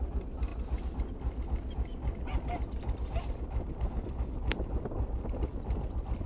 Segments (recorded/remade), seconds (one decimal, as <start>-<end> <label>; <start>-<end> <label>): 0.0-6.3 recorded